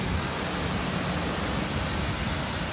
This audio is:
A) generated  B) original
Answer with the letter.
B